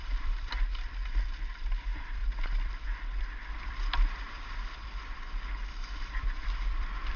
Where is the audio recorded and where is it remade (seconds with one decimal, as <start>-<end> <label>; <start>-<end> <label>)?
0.0-2.2 remade; 2.2-3.2 recorded; 3.2-7.2 remade